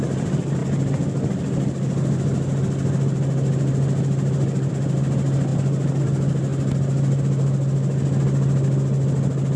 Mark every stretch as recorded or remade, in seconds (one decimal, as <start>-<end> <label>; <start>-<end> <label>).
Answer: 0.0-9.6 recorded